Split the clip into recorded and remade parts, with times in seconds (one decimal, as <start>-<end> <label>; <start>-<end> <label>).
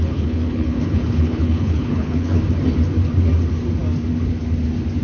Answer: 0.0-2.4 remade; 2.4-5.0 recorded